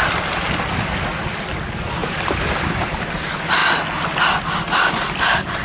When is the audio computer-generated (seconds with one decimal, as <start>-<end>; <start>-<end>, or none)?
2.0-3.0